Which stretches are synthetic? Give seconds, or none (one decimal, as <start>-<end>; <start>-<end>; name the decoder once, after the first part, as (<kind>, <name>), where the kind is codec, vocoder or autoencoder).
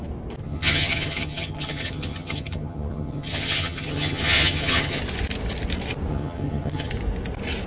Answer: 0.4-5.0 (vocoder, HiFi-GAN); 6.1-6.9